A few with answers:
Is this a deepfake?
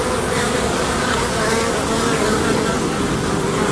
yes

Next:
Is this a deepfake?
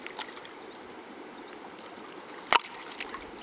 no